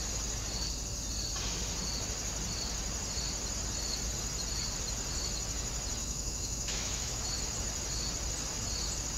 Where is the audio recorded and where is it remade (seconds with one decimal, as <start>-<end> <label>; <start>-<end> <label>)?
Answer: 0.0-6.0 recorded; 6.0-7.3 remade; 7.3-9.2 recorded